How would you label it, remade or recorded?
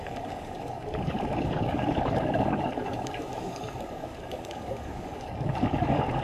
remade